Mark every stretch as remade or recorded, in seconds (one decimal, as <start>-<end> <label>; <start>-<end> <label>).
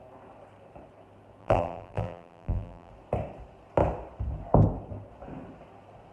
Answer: 0.0-1.4 recorded; 1.4-2.9 remade; 2.9-6.1 recorded